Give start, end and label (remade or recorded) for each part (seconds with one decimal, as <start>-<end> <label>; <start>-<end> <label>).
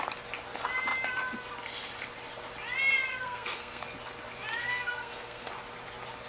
0.0-3.1 recorded; 3.1-3.8 remade; 3.8-4.6 recorded; 4.6-5.5 remade; 5.5-6.3 recorded